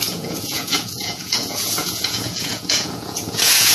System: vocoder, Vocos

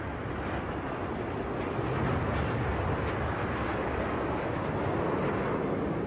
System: none